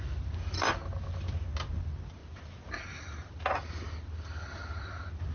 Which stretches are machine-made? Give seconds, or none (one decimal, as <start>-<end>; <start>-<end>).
none